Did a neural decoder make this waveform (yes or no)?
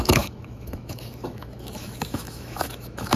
yes